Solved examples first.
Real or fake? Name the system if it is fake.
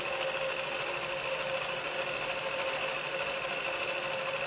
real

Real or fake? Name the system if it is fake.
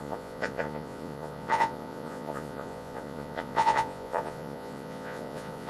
fake, vocoder, Vocos